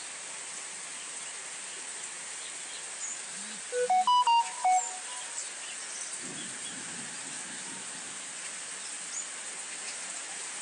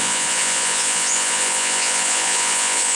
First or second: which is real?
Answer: first